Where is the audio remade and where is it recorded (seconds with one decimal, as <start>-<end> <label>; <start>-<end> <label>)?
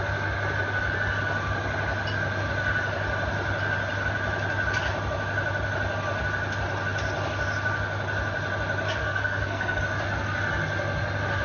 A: 0.0-9.0 recorded; 9.0-9.8 remade; 9.8-11.4 recorded